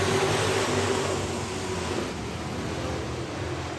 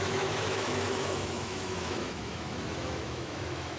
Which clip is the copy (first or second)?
second